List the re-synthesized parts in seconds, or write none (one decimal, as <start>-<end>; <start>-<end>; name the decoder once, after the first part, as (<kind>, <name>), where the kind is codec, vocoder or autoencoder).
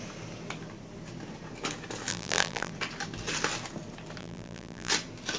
2.1-2.7 (vocoder, BigVGAN v2); 4.2-4.9